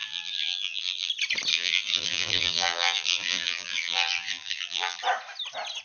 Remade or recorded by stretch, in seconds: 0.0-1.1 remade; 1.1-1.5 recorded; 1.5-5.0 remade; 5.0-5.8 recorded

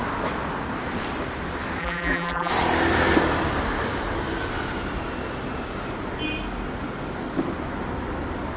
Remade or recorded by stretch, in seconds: 0.0-1.8 recorded; 1.8-2.5 remade; 2.5-8.6 recorded

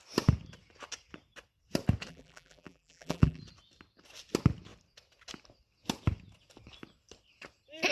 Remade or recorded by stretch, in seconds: 0.0-2.1 recorded; 2.1-3.4 remade; 3.4-7.9 recorded

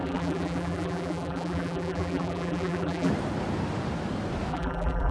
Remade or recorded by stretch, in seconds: 0.0-3.1 remade; 3.1-4.5 recorded; 4.5-5.1 remade

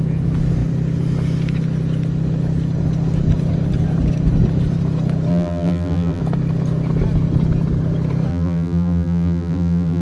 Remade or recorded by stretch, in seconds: 0.0-5.3 recorded; 5.3-6.2 remade; 6.2-8.3 recorded; 8.3-10.0 remade

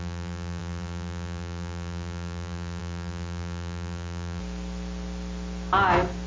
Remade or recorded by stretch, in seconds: 0.0-4.4 remade; 4.4-6.3 recorded